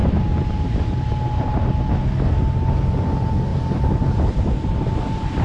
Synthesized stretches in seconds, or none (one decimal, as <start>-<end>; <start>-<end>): 0.0-1.7; 3.5-4.3